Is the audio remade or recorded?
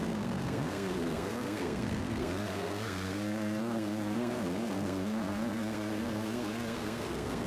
remade